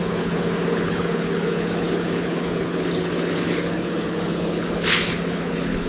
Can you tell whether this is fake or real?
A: fake